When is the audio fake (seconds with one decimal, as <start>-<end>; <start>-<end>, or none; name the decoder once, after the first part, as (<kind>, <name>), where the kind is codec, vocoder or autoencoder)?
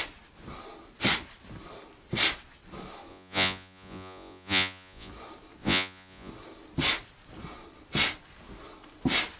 3.1-5.1 (vocoder, Vocos); 5.6-6.3